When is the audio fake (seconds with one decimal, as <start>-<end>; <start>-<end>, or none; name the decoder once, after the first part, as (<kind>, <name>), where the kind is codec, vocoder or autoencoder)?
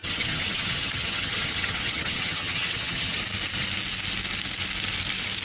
0.0-3.2 (vocoder, HiFi-GAN)